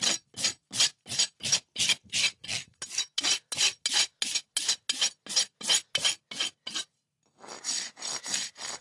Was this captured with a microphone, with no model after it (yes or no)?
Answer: yes